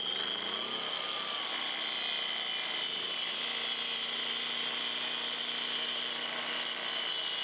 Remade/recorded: recorded